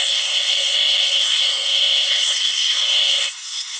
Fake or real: fake